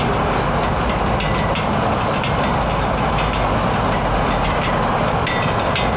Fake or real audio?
real